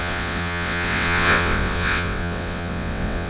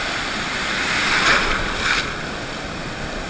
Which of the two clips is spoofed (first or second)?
first